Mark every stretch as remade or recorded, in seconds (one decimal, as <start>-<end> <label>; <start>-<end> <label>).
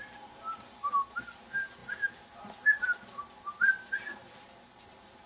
0.0-5.3 recorded